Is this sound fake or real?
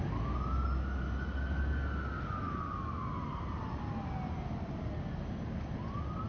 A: real